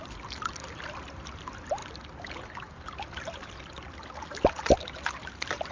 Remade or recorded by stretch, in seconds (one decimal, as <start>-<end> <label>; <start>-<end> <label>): 0.0-5.7 recorded